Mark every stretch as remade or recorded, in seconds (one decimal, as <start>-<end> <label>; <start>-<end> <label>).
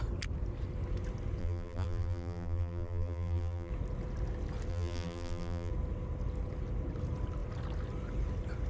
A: 0.0-1.4 recorded; 1.4-3.7 remade; 3.7-4.7 recorded; 4.7-5.7 remade; 5.7-8.7 recorded